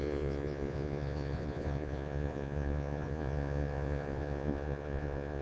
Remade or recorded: remade